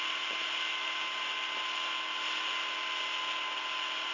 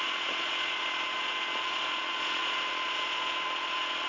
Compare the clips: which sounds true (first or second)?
first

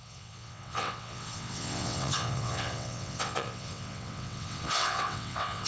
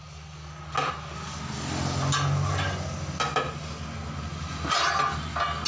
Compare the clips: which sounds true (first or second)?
second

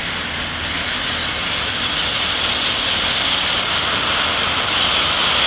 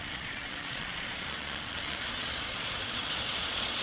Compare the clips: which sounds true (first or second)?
first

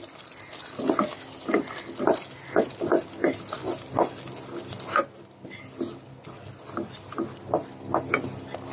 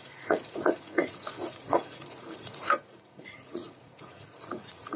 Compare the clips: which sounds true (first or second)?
first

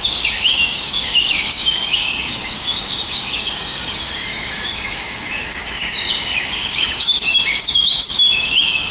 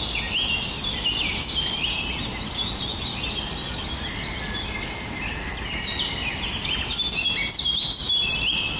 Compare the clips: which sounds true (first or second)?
second